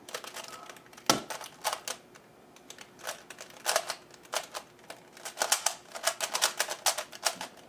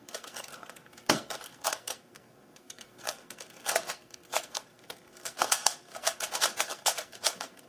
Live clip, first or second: first